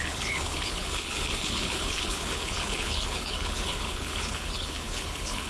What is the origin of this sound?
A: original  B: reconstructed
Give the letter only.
B